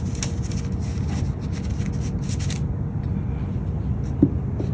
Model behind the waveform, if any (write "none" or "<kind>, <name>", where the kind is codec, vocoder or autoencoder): none